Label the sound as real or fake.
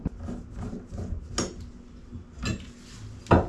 real